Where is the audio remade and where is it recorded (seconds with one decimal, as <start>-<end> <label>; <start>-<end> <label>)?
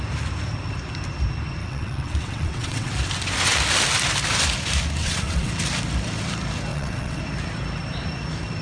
0.0-1.6 recorded; 1.6-2.9 remade; 2.9-5.0 recorded; 5.0-5.5 remade; 5.5-6.7 recorded; 6.7-7.2 remade; 7.2-8.6 recorded